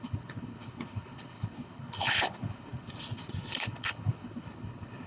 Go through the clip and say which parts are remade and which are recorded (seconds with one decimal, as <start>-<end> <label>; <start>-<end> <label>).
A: 0.0-5.1 remade